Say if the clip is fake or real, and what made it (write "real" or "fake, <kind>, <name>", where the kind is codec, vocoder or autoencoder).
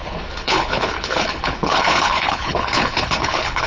fake, codec, HILCodec